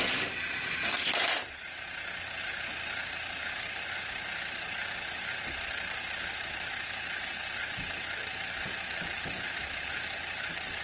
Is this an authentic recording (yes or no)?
no